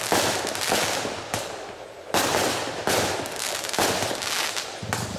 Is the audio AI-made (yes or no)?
no